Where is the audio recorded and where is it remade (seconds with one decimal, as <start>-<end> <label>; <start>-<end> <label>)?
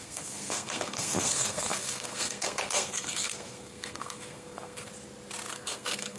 0.0-4.9 remade; 4.9-5.5 recorded; 5.5-6.2 remade